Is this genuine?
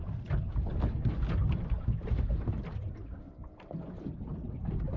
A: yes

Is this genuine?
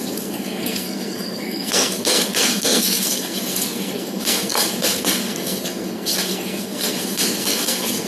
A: no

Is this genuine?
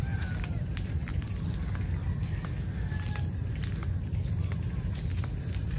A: yes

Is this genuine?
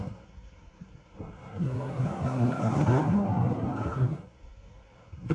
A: no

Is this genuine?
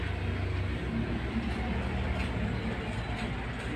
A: yes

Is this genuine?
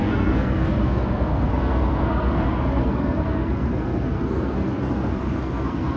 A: no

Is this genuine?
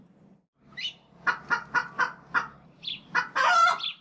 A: yes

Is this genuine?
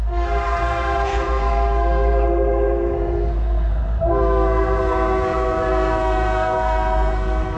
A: no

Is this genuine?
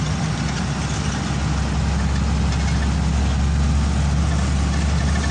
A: yes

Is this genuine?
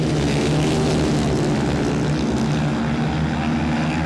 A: yes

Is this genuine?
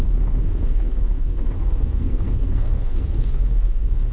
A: no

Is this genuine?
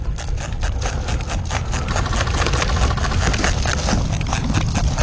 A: yes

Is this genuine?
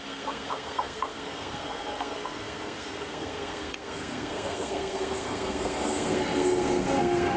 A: no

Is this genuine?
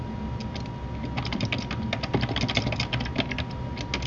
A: yes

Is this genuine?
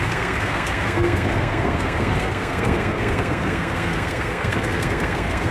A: no